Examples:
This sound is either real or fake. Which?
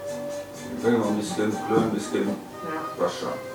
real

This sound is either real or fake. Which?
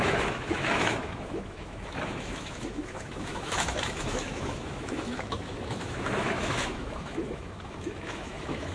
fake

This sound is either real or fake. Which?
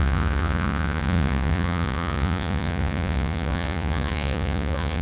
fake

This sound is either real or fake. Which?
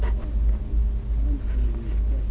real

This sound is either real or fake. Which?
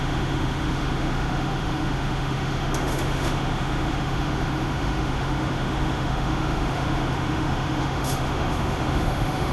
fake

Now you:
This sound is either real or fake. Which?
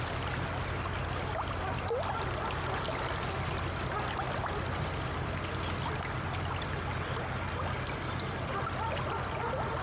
real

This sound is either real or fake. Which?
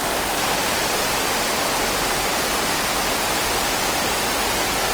real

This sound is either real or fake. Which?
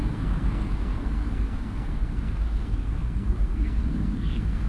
fake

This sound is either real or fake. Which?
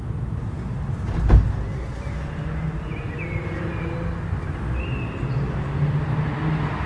real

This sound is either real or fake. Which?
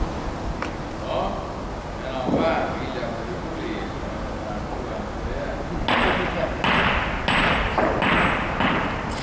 real